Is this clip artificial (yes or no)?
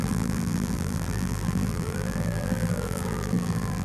yes